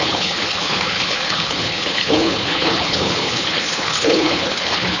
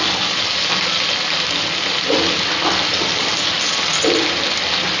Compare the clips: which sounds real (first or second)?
second